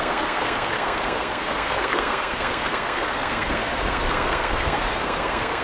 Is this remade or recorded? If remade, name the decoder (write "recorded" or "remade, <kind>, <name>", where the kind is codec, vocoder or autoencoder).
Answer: remade, codec, SNAC